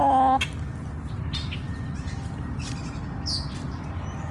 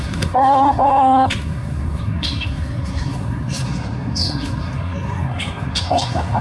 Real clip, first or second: first